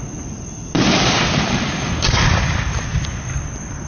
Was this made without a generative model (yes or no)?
yes